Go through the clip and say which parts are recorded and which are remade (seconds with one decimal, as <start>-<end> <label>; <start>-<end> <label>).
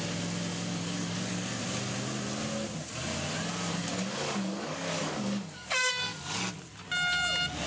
0.0-0.5 recorded; 0.5-1.6 remade; 1.6-3.7 recorded; 3.7-6.4 remade; 6.4-7.7 recorded